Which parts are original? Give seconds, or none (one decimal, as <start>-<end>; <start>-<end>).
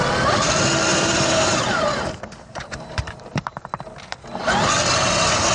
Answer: 0.0-0.9; 3.6-5.5